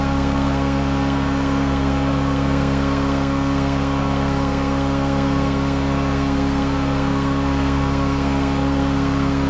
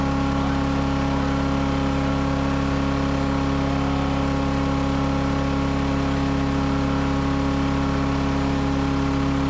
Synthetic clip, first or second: first